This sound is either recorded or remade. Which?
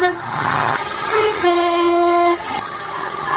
remade